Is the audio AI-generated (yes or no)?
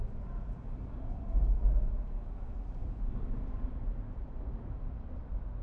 no